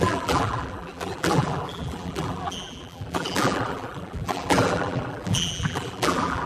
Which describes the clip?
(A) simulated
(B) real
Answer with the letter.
A